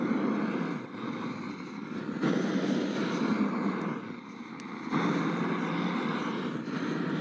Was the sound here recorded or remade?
recorded